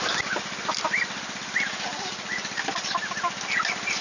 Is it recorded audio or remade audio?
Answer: recorded